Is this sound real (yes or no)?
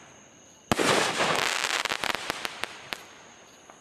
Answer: yes